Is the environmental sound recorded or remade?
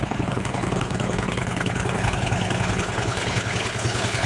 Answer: remade